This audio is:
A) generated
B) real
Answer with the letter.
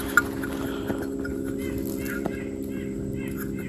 B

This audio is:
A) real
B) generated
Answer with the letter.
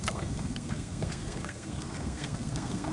B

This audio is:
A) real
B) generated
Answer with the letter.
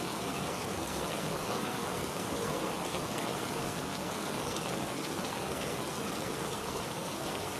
B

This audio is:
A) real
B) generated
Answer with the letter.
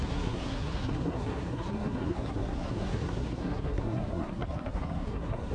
B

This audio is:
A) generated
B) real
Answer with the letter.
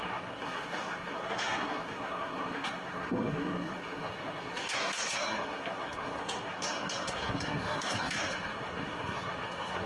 A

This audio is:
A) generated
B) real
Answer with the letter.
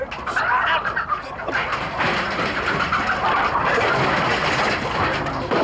B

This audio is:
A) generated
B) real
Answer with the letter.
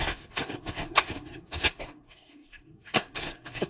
A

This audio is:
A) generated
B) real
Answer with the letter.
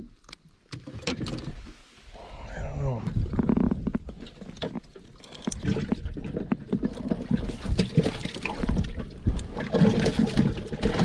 B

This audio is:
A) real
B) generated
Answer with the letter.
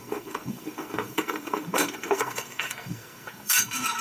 B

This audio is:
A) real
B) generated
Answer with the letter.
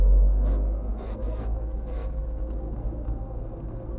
B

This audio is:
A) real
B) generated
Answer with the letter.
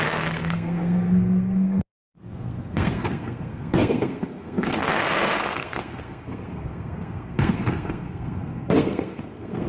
B